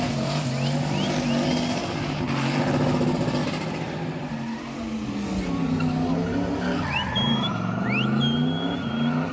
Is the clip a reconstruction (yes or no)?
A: no